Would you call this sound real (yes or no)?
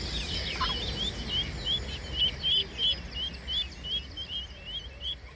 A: yes